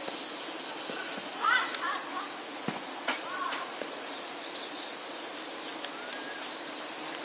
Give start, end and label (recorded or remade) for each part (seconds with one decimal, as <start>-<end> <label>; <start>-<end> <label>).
0.0-1.0 recorded; 1.0-5.3 remade; 5.3-7.2 recorded